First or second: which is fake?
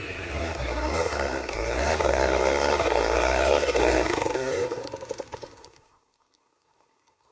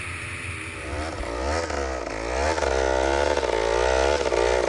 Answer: first